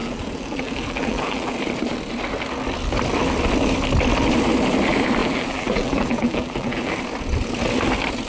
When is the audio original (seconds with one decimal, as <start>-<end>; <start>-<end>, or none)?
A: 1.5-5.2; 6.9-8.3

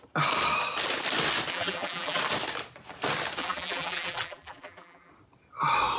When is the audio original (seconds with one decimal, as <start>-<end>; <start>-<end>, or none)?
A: 0.0-1.5; 2.2-3.4; 5.1-6.0

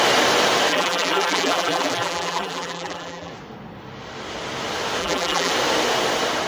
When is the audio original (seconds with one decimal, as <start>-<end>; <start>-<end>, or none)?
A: 0.0-0.7; 3.3-5.0; 5.5-6.5

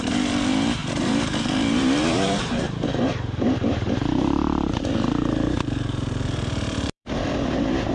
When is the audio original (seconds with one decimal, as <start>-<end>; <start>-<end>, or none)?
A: none

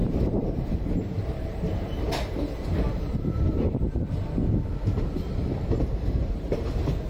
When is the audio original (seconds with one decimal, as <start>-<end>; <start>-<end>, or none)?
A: 4.4-6.1